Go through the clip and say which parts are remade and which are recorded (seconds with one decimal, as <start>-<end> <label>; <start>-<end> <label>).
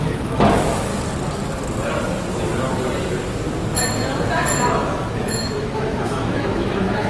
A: 0.0-0.9 remade; 0.9-4.7 recorded; 4.7-7.1 remade